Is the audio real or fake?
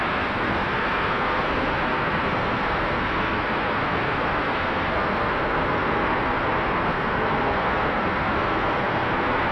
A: fake